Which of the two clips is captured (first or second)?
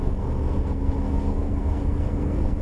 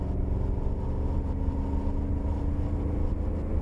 second